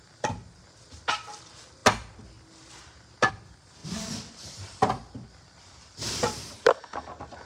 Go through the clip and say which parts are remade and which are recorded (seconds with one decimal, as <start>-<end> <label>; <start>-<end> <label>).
0.0-3.8 recorded; 3.8-7.1 remade; 7.1-7.5 recorded